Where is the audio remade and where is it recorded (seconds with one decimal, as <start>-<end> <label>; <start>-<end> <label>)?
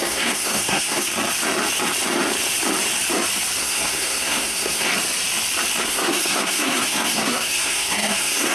0.0-1.1 remade; 1.1-3.6 recorded; 3.6-4.9 remade; 4.9-5.8 recorded; 5.8-8.5 remade